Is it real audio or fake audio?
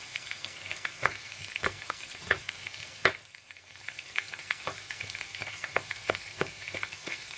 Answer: fake